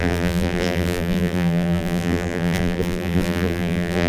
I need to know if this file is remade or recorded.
remade